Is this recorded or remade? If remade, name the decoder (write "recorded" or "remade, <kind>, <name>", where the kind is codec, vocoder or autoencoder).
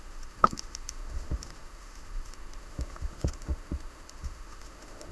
remade, autoencoder, DAC-VAE